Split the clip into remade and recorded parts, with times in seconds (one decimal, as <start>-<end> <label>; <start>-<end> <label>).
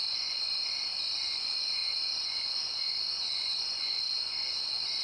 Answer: 0.0-0.6 remade; 0.6-1.2 recorded; 1.2-5.0 remade